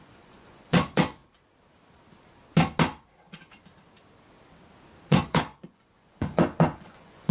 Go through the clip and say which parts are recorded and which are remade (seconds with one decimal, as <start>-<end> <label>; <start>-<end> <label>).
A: 0.0-1.2 remade; 1.2-5.1 recorded; 5.1-7.3 remade

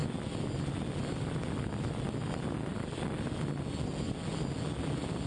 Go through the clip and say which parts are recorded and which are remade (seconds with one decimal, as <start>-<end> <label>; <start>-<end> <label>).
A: 0.0-5.3 recorded

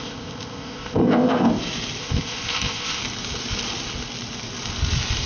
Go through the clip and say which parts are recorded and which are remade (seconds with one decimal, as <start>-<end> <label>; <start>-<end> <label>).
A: 0.0-1.5 remade; 1.5-2.0 recorded; 2.0-3.0 remade; 3.0-5.3 recorded

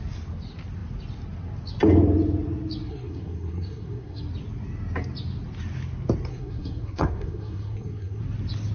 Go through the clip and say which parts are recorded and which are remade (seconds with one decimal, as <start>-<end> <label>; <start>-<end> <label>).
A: 0.0-2.9 recorded; 2.9-4.2 remade; 4.2-6.3 recorded; 6.3-8.2 remade; 8.2-8.7 recorded

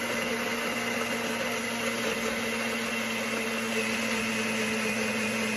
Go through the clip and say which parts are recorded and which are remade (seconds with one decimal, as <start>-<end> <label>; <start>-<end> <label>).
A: 0.0-5.6 recorded

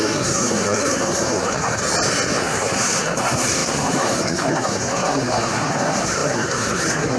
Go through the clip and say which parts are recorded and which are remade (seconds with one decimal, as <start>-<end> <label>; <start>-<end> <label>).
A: 0.0-1.8 remade; 1.8-2.4 recorded; 2.4-7.2 remade

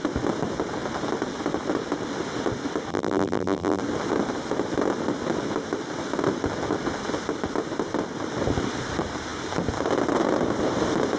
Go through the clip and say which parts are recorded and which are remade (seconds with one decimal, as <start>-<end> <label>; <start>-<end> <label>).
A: 0.0-2.9 recorded; 2.9-3.8 remade; 3.8-11.2 recorded